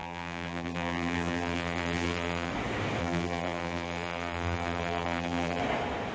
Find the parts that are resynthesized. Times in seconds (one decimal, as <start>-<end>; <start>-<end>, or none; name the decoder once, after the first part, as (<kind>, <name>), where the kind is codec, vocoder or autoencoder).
0.0-2.5 (vocoder, BigVGAN v2); 3.0-5.6